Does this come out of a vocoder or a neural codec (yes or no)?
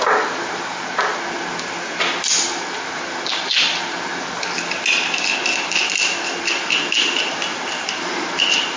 no